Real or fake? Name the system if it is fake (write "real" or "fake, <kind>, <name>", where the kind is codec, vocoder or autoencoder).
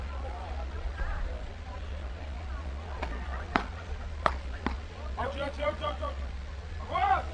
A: fake, vocoder, Vocos